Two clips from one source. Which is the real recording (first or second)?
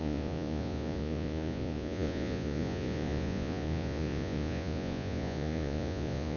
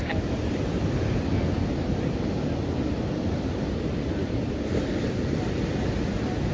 second